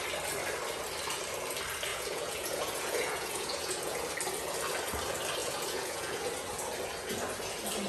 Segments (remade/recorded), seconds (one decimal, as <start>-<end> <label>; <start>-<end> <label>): 0.0-1.9 recorded; 1.9-4.0 remade; 4.0-5.4 recorded; 5.4-6.2 remade; 6.2-7.9 recorded